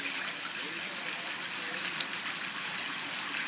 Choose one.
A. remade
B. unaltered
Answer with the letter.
B